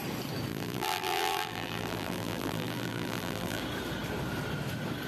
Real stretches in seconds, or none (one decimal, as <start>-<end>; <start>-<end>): 0.0-0.5; 3.6-5.1